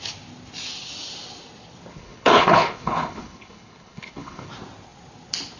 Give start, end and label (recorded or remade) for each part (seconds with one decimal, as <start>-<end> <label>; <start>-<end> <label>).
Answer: 0.0-1.9 recorded; 1.9-4.5 remade; 4.5-5.6 recorded